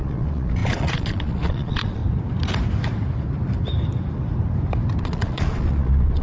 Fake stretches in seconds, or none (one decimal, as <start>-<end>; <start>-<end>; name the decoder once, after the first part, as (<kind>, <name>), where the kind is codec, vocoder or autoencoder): 0.0-2.0 (vocoder, Vocos); 5.0-6.2